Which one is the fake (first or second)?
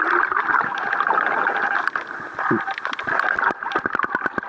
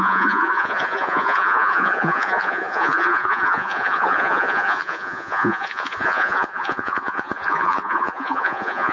second